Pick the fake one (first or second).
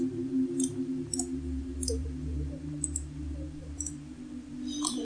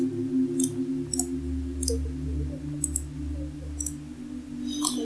first